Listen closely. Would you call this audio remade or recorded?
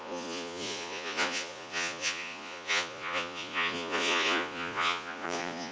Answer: remade